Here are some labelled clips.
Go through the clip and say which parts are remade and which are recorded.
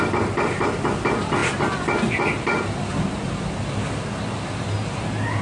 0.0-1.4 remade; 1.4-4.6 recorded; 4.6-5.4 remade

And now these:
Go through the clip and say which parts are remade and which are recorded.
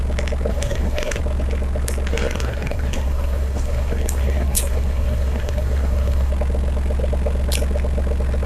0.0-0.5 recorded; 0.5-1.2 remade; 1.2-2.1 recorded; 2.1-6.3 remade; 6.3-8.5 recorded